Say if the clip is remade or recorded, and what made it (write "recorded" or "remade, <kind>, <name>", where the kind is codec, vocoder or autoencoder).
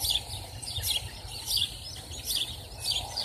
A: recorded